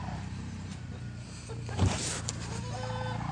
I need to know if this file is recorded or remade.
recorded